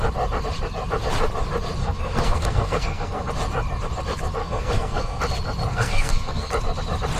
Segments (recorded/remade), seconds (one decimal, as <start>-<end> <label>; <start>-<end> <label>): 0.0-1.8 recorded; 1.8-3.3 remade; 3.3-4.4 recorded; 4.4-5.2 remade; 5.2-5.7 recorded; 5.7-6.5 remade; 6.5-7.2 recorded